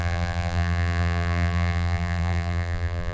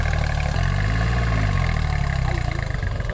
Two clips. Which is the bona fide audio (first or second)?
second